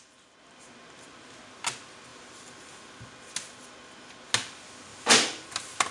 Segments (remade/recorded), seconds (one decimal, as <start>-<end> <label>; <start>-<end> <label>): 0.0-2.1 recorded; 2.1-2.8 remade; 2.8-4.9 recorded; 4.9-5.5 remade; 5.5-5.9 recorded

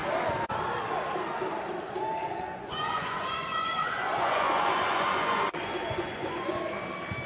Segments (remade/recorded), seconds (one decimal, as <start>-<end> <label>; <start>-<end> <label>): 0.0-2.2 recorded; 2.2-6.6 remade; 6.6-7.3 recorded

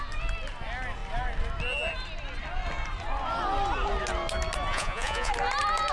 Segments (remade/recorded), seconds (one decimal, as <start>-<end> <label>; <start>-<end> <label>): 0.0-4.7 recorded; 4.7-5.3 remade; 5.3-5.9 recorded

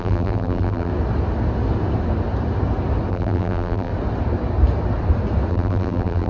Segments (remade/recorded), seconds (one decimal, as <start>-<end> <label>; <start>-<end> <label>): 0.0-0.9 remade; 0.9-3.1 recorded; 3.1-3.9 remade; 3.9-5.5 recorded; 5.5-6.3 remade

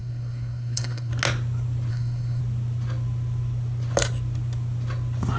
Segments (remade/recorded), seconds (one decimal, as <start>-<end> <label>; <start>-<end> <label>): 0.0-1.1 remade; 1.1-1.9 recorded; 1.9-2.4 remade; 2.4-5.4 recorded